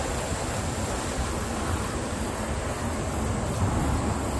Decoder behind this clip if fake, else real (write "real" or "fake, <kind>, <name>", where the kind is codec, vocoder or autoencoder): real